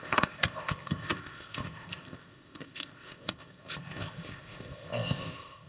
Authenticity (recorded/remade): remade